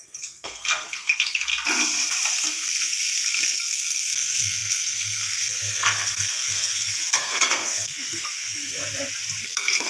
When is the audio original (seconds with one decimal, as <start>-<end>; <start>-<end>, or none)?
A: 1.5-2.3; 8.8-9.4